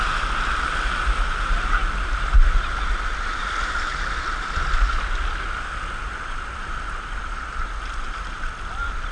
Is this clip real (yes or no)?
yes